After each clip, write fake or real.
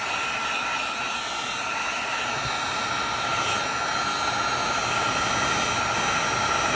real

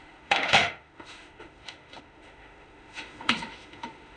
fake